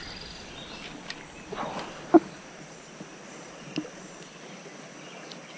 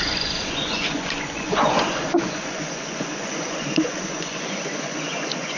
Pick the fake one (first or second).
second